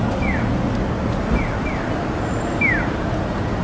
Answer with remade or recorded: recorded